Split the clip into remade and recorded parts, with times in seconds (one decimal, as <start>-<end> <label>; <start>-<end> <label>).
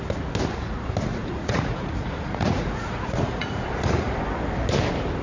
0.0-1.1 recorded; 1.1-4.2 remade; 4.2-5.2 recorded